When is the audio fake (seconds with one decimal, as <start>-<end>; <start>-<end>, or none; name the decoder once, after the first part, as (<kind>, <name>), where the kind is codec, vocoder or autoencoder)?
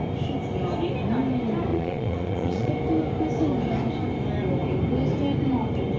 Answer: 1.7-2.7 (vocoder, Vocos)